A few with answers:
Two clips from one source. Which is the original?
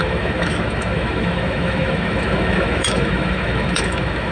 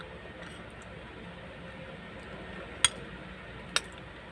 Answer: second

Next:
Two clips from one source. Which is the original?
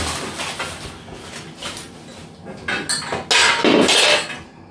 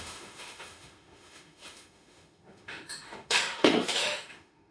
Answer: first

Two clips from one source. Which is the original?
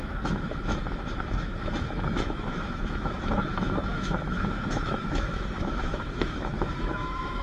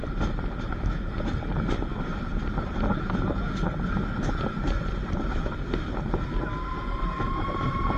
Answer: second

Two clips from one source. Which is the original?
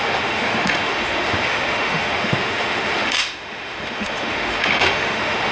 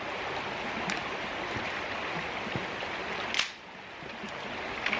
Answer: second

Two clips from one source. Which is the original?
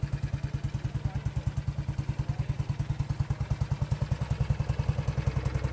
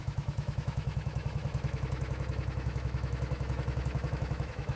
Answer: first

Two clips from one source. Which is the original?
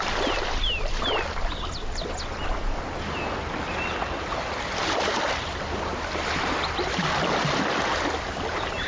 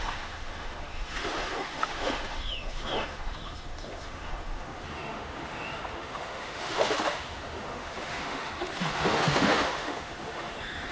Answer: first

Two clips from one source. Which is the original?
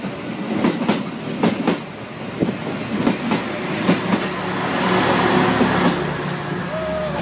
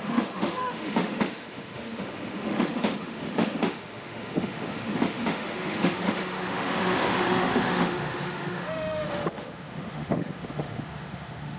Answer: first